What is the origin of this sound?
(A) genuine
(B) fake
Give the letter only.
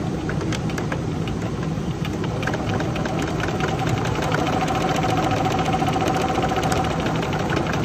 B